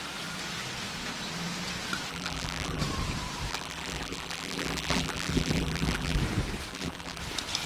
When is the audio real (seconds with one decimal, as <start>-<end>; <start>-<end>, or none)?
0.0-2.1; 2.8-3.5; 6.2-6.7; 7.2-7.7

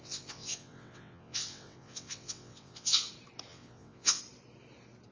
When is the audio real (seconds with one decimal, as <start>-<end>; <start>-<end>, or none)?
3.1-3.5; 4.2-5.1

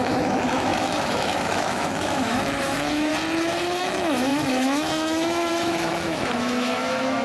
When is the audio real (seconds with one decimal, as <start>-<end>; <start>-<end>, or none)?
3.1-3.8

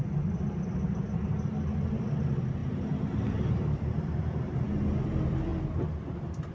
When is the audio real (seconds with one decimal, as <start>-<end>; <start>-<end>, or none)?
0.0-6.5

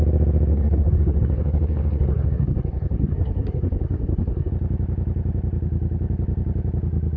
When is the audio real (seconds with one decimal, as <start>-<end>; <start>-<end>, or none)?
0.0-0.5; 4.5-7.2